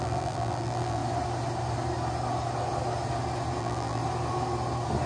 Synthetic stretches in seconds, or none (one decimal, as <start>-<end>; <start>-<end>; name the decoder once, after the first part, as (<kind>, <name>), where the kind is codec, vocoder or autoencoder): 0.0-1.0 (vocoder, BigVGAN v2); 3.6-4.0